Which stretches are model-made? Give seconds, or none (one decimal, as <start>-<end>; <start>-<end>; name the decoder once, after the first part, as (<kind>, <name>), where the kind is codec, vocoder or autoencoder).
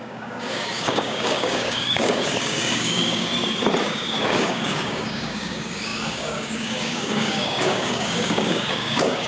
0.0-3.3 (codec, DAC); 3.8-9.3